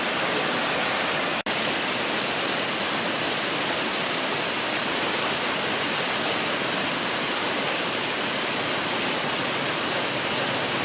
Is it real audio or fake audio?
real